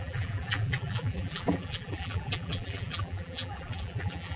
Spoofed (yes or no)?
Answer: yes